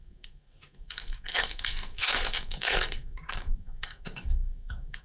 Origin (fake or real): fake